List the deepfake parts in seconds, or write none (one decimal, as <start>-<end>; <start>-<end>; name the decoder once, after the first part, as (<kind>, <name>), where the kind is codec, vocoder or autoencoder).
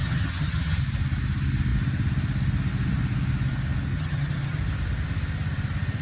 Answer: 0.0-0.8 (vocoder, HiFi-GAN); 3.9-4.6